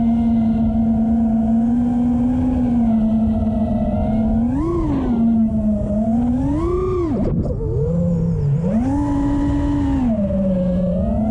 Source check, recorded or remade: recorded